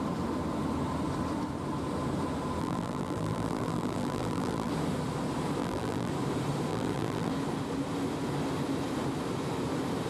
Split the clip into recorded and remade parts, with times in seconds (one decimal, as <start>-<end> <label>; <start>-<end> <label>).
0.0-2.6 recorded; 2.6-4.7 remade; 4.7-5.6 recorded; 5.6-6.1 remade; 6.1-6.7 recorded; 6.7-7.3 remade; 7.3-10.1 recorded